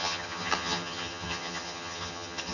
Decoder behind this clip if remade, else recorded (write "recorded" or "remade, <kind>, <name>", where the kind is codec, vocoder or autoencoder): remade, vocoder, HiFi-GAN